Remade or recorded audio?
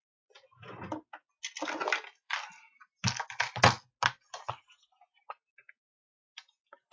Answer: recorded